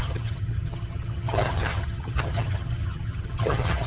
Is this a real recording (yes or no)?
no